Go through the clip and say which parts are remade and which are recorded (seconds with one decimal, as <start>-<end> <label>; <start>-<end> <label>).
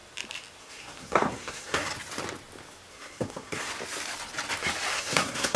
0.0-0.6 recorded; 0.6-1.9 remade; 1.9-2.9 recorded; 2.9-3.7 remade; 3.7-4.9 recorded; 4.9-5.6 remade